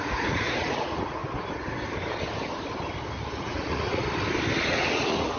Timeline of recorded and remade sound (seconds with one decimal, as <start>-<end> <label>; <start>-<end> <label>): 0.0-1.2 remade; 1.2-3.3 recorded; 3.3-4.0 remade; 4.0-4.6 recorded; 4.6-5.4 remade